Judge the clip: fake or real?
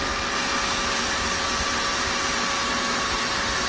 real